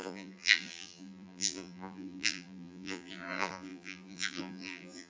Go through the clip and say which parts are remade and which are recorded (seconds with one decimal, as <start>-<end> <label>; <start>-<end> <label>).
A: 0.0-5.1 remade

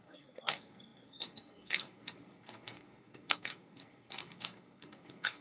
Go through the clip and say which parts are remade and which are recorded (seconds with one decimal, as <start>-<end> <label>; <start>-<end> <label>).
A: 0.0-5.4 remade

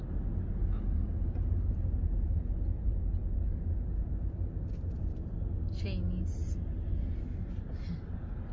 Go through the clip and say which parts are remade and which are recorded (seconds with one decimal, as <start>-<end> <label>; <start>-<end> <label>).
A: 0.0-8.5 recorded

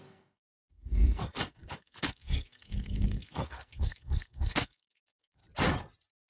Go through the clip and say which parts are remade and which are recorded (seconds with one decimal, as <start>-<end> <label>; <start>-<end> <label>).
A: 0.0-5.4 remade; 5.4-6.3 recorded

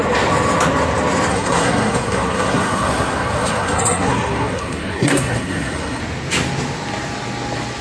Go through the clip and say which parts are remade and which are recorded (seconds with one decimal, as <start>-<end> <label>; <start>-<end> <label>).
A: 0.0-1.3 recorded; 1.3-6.0 remade; 6.0-7.8 recorded

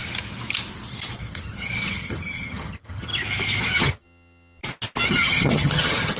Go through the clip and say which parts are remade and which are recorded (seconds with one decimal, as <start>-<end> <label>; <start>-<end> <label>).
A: 0.0-1.2 recorded; 1.2-3.1 remade; 3.1-3.6 recorded; 3.6-4.6 remade; 4.6-5.1 recorded; 5.1-6.2 remade

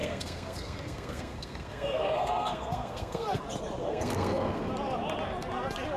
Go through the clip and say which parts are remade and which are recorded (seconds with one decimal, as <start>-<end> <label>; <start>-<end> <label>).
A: 0.0-3.4 remade; 3.4-3.8 recorded; 3.8-4.7 remade; 4.7-6.0 recorded